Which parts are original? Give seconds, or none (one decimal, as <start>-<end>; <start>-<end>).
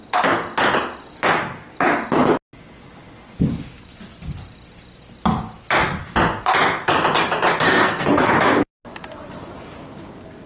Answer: 0.0-7.7; 8.3-10.5